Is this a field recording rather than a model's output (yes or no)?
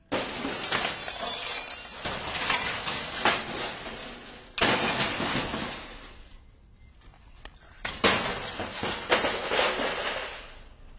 yes